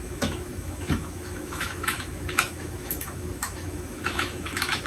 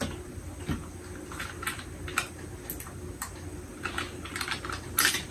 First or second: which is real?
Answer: second